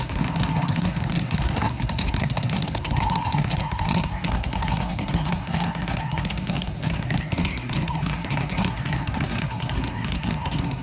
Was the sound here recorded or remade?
remade